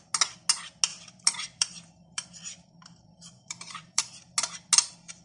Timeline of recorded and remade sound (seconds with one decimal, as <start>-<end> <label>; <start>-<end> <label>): 0.0-0.9 recorded; 0.9-4.0 remade; 4.0-5.2 recorded